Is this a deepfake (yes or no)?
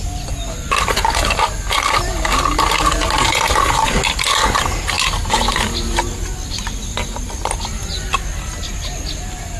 no